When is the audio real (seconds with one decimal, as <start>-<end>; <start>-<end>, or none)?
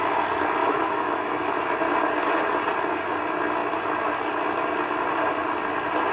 0.0-0.6; 1.5-6.1